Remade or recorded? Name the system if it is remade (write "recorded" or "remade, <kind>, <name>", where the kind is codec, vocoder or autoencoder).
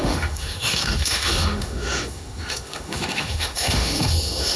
remade, autoencoder, DAC-VAE